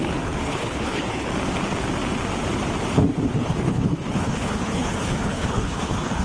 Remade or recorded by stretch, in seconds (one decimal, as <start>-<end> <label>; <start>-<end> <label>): 0.0-1.3 remade; 1.3-3.3 recorded; 3.3-6.2 remade